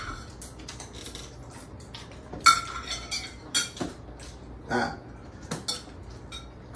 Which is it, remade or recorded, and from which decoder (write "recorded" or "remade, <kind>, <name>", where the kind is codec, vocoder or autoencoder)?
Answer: recorded